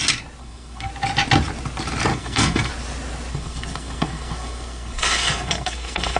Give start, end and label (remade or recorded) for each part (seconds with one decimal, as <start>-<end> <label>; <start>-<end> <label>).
0.0-0.4 recorded; 0.4-0.9 remade; 0.9-2.1 recorded; 2.1-2.7 remade; 2.7-3.3 recorded; 3.3-6.2 remade